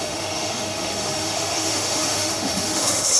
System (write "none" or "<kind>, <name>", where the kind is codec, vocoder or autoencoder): autoencoder, DAC-VAE